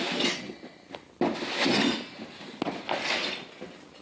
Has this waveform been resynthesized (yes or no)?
no